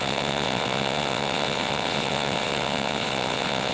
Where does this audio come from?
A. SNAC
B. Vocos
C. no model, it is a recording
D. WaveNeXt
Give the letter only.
D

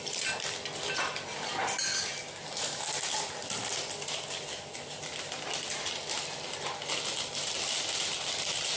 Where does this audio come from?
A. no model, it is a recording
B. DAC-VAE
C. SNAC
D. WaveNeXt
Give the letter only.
A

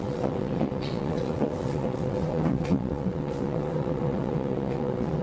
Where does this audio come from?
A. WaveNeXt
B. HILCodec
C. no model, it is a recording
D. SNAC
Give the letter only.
A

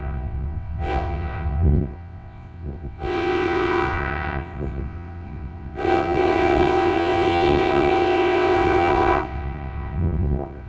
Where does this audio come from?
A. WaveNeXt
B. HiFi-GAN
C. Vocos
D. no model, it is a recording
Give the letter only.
A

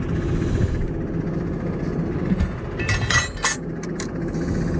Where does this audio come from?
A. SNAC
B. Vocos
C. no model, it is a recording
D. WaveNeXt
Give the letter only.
C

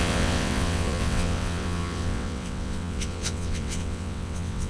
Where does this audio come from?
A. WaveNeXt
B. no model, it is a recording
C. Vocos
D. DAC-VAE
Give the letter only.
A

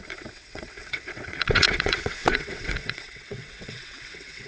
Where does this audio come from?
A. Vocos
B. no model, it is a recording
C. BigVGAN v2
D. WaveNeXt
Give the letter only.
D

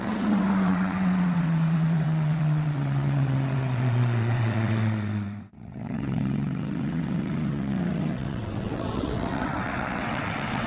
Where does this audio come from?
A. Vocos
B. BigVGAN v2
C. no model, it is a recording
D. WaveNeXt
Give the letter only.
D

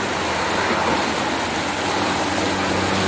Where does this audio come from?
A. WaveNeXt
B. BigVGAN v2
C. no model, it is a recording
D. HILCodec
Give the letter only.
C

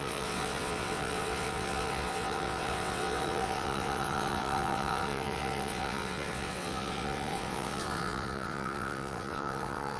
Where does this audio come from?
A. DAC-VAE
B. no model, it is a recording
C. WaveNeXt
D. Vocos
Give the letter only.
C